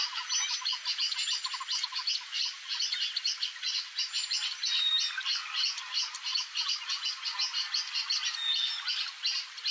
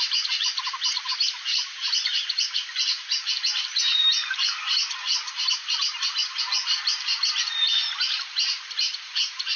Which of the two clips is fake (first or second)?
second